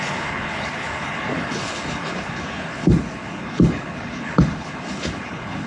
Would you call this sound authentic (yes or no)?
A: no